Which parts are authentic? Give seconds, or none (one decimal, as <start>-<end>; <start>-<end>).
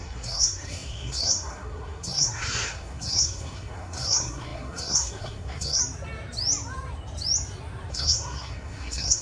5.8-7.9